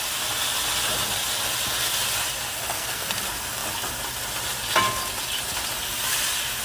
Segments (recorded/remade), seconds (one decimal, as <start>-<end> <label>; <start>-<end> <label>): 0.0-2.5 recorded; 2.5-3.2 remade; 3.2-6.6 recorded